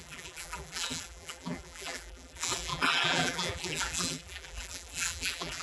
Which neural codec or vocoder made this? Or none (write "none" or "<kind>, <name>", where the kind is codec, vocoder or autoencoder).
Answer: vocoder, BigVGAN v2